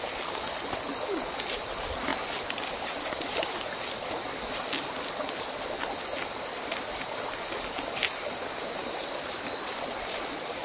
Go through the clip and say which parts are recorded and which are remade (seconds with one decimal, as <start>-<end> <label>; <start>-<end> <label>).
0.0-10.6 recorded